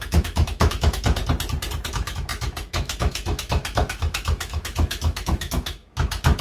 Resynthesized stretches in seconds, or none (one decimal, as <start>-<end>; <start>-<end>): 0.0-1.2; 1.9-6.4